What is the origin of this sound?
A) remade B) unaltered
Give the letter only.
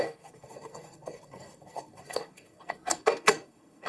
A